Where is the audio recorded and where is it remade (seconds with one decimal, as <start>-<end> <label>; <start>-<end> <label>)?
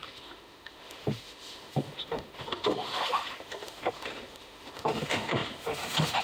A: 0.0-6.2 remade